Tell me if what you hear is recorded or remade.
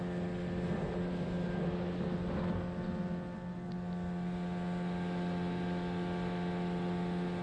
recorded